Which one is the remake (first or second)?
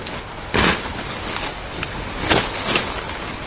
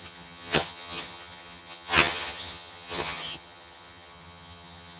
second